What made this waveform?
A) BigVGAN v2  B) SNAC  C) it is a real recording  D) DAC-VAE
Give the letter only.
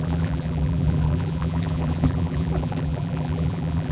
A